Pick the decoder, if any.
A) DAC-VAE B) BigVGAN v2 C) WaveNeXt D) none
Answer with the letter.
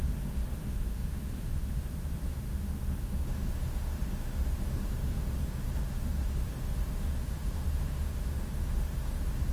A